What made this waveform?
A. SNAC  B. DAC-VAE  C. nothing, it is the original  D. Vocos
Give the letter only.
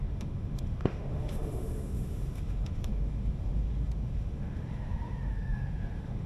B